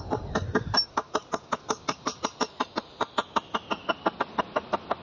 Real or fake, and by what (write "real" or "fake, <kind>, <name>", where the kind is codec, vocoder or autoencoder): real